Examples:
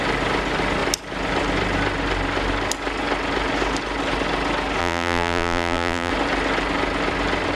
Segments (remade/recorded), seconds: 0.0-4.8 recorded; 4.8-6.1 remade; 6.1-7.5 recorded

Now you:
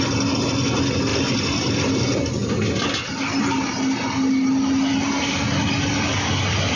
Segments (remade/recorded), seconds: 0.0-6.8 recorded

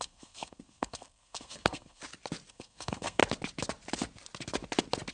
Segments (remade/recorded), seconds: 0.0-2.0 remade; 2.0-2.5 recorded; 2.5-3.2 remade; 3.2-5.1 recorded

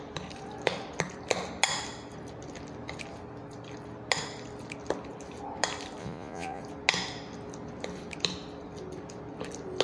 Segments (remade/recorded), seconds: 0.0-6.0 recorded; 6.0-6.6 remade; 6.6-9.8 recorded

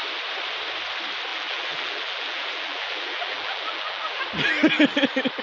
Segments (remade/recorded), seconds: 0.0-1.3 recorded; 1.3-4.2 remade; 4.2-5.4 recorded